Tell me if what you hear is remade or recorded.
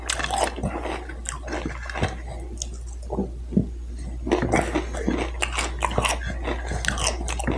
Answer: recorded